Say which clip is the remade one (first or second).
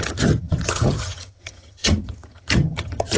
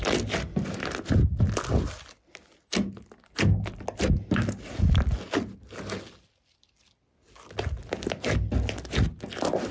first